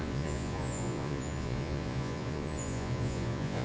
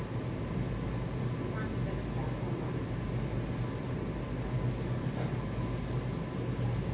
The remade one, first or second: first